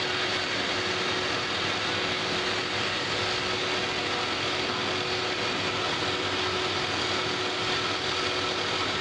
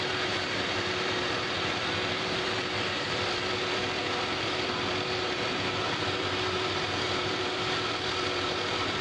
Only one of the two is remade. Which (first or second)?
second